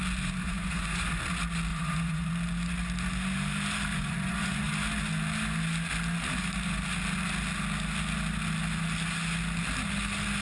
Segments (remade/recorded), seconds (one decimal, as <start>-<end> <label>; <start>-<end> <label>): 0.0-0.4 recorded; 0.4-1.2 remade; 1.2-1.7 recorded; 1.7-2.3 remade; 2.3-3.9 recorded; 3.9-4.7 remade; 4.7-10.4 recorded